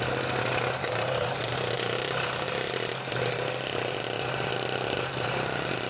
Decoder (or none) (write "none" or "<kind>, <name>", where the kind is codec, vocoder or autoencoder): none